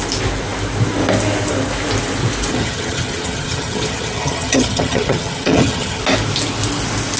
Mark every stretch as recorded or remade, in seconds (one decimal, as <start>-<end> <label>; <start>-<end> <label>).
0.0-2.5 recorded; 2.5-6.0 remade; 6.0-7.2 recorded